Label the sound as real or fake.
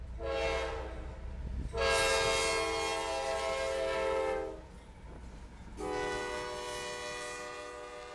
real